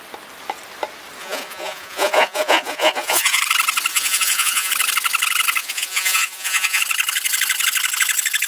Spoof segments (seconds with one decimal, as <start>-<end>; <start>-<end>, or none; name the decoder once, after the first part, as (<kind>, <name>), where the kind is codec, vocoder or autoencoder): 1.2-3.4 (vocoder, Vocos); 3.9-4.7; 5.6-6.8